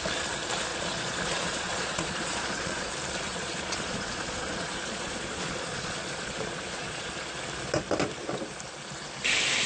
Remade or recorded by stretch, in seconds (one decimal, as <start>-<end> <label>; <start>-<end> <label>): 0.0-0.7 recorded; 0.7-2.9 remade; 2.9-3.3 recorded; 3.3-7.1 remade; 7.1-9.7 recorded